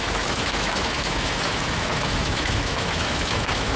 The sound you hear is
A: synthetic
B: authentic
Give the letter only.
A